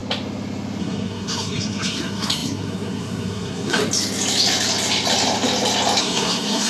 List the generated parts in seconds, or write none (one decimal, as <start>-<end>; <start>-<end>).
0.8-3.8; 6.0-6.7